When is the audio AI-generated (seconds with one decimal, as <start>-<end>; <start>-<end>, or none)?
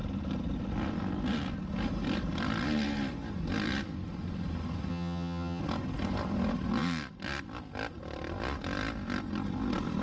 4.9-5.6